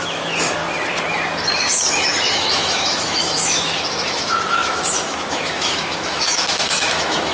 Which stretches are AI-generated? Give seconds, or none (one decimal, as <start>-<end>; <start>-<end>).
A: 0.0-0.6; 1.6-7.3